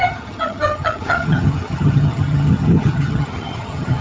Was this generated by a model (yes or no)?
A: yes